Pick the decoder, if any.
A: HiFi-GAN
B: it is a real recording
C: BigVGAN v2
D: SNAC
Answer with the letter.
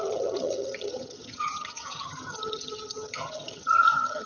A